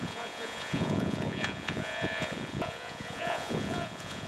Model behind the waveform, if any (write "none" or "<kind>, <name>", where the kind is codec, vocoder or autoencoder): vocoder, Vocos